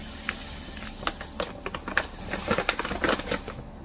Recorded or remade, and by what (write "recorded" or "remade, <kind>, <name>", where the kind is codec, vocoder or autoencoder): recorded